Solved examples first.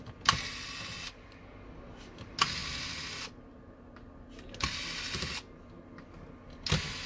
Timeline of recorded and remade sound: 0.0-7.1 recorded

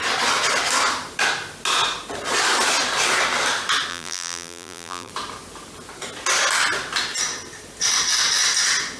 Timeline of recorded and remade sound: 0.0-3.9 recorded; 3.9-5.1 remade; 5.1-9.0 recorded